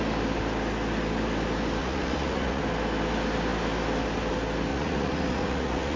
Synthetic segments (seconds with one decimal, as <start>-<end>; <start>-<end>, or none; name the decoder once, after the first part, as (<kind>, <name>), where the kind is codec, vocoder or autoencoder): 1.8-2.6 (vocoder, Vocos); 4.7-6.0